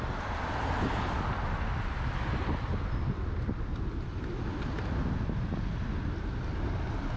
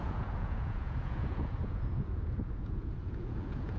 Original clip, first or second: first